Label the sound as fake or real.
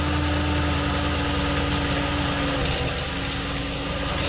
real